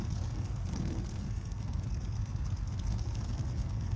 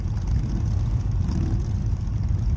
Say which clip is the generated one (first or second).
first